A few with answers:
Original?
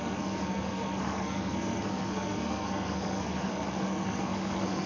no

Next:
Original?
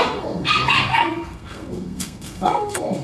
no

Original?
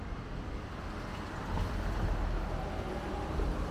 yes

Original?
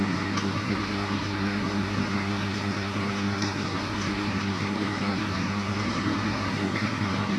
no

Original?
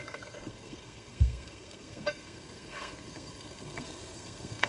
no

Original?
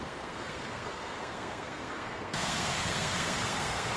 no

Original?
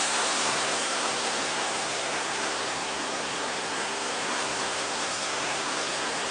no